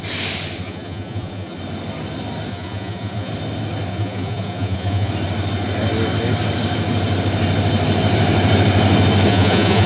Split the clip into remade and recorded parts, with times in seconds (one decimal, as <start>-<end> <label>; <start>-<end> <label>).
0.0-0.6 recorded; 0.6-1.6 remade; 1.6-2.5 recorded; 2.5-3.3 remade; 3.3-3.9 recorded; 3.9-5.1 remade; 5.1-9.3 recorded; 9.3-9.9 remade